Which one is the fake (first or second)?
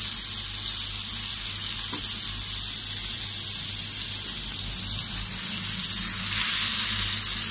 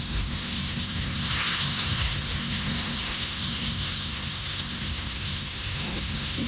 second